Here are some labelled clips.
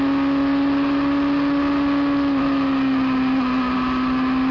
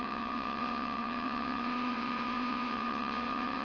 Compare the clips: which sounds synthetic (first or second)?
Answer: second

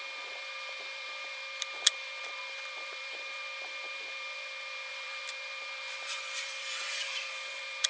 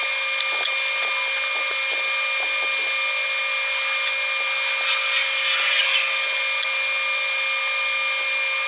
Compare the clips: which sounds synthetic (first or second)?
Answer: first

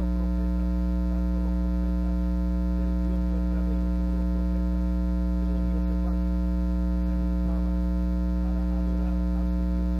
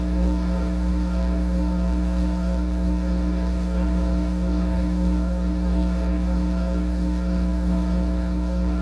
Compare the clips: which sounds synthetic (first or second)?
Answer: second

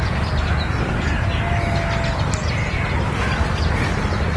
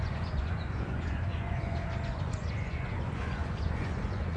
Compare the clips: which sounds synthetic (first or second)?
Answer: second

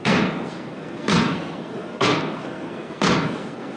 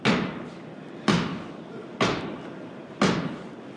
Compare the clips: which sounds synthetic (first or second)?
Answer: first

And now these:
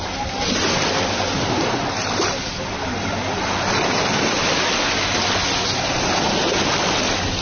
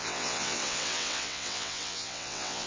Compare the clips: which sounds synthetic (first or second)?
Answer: second